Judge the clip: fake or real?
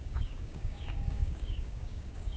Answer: fake